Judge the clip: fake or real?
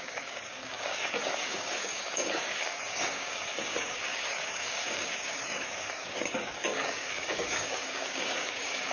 fake